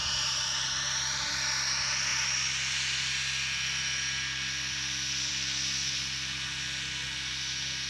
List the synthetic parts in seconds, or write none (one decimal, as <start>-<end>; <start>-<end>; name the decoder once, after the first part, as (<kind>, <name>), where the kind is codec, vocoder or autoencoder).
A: 0.0-1.3 (vocoder, BigVGAN v2)